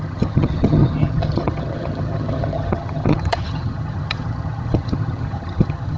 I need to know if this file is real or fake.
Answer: fake